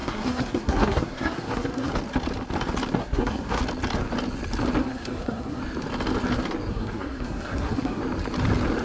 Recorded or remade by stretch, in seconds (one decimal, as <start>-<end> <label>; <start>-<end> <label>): 0.0-1.9 remade; 1.9-3.0 recorded; 3.0-3.6 remade; 3.6-4.8 recorded; 4.8-5.6 remade; 5.6-6.7 recorded; 6.7-8.0 remade; 8.0-8.8 recorded